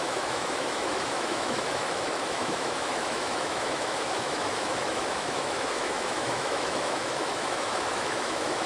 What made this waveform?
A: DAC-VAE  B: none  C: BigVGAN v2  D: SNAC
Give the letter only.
A